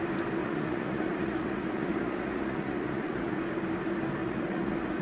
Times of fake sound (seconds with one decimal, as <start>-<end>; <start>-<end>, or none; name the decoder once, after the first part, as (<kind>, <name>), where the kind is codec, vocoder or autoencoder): 0.4-3.4 (vocoder, Vocos); 4.2-5.0